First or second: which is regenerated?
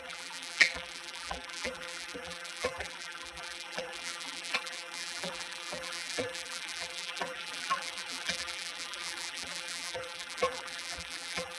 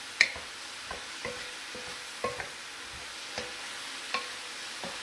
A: first